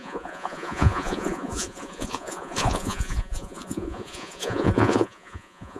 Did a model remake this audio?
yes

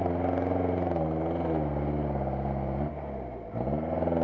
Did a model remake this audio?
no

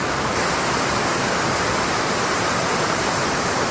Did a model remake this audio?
no